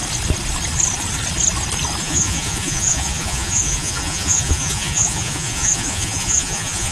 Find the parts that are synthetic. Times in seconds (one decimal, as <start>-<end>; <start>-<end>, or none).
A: 2.0-6.9